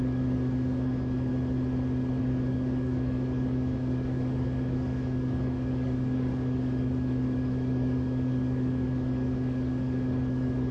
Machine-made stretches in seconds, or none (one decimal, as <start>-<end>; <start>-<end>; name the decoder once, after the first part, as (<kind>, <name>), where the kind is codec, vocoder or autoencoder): 0.0-1.3 (codec, DAC); 2.2-10.7